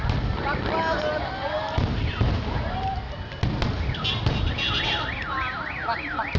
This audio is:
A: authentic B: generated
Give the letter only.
A